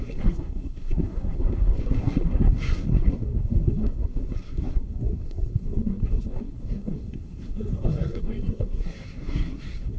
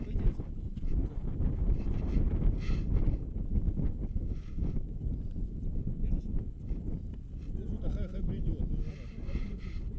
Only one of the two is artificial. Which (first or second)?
first